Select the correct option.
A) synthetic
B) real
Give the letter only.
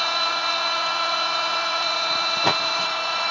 A